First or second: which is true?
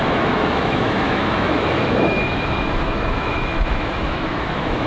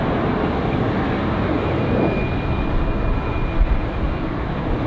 second